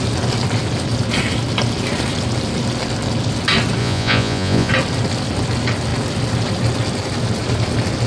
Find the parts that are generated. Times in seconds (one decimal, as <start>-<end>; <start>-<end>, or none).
3.8-4.7